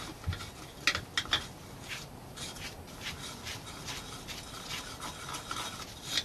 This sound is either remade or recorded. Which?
recorded